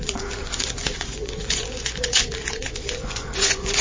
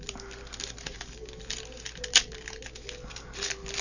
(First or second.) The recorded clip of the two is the second